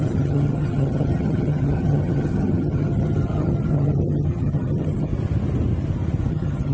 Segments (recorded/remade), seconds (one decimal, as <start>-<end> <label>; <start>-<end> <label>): 0.0-5.1 remade; 5.1-6.3 recorded; 6.3-6.7 remade